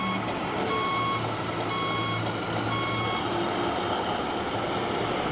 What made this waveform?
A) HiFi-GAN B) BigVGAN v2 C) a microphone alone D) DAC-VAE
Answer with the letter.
C